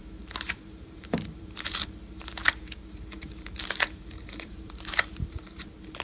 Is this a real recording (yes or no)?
no